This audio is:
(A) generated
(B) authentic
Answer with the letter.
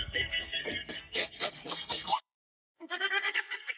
A